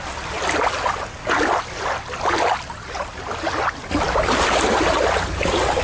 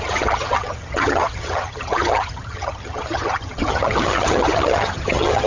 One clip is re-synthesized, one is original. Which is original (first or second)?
first